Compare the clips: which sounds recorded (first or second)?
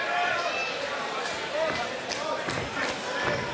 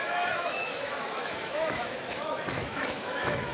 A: first